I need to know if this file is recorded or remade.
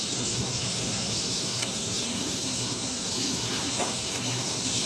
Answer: remade